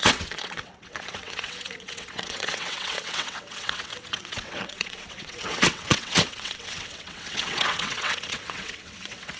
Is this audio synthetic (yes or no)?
yes